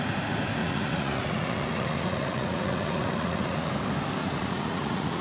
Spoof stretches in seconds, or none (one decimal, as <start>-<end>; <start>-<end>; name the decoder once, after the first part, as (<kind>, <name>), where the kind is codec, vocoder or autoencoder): 0.6-3.7 (vocoder, Vocos); 4.2-5.2